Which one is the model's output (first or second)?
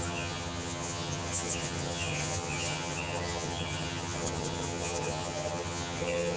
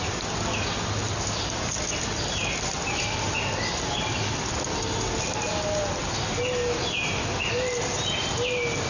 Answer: first